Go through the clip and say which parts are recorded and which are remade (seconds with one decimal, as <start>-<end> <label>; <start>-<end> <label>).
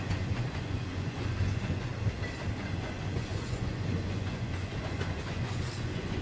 0.0-1.9 remade; 1.9-2.6 recorded; 2.6-6.2 remade